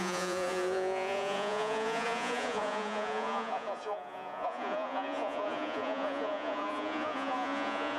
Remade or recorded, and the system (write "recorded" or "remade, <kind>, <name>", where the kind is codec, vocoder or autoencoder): remade, vocoder, Vocos